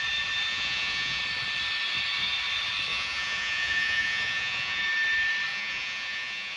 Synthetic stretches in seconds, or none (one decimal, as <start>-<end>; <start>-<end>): 0.5-1.2; 2.9-4.8; 5.5-6.6